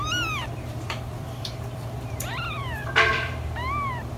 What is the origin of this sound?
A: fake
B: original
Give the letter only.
A